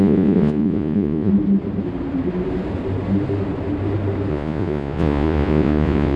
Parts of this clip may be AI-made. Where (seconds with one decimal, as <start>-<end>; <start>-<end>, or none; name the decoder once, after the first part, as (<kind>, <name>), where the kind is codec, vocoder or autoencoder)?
0.0-1.3 (vocoder, Vocos); 4.3-6.2